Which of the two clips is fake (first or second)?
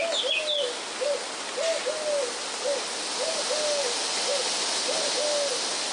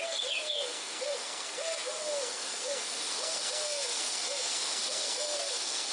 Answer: second